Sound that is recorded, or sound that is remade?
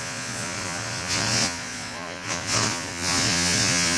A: remade